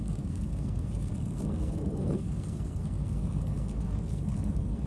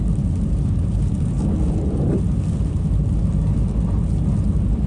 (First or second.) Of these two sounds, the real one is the second